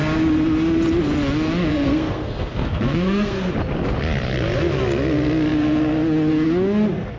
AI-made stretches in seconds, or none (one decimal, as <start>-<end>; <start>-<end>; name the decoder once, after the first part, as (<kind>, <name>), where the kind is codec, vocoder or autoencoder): 1.7-3.5 (codec, SNAC)